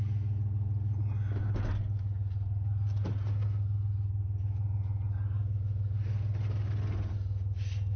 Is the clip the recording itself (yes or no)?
yes